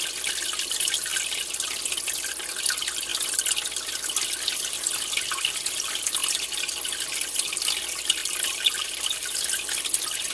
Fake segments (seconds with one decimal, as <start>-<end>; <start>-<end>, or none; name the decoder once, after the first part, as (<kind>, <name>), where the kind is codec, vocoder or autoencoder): 8.2-9.7 (vocoder, BigVGAN v2)